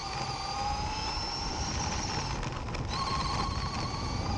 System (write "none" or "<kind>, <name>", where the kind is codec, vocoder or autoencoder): none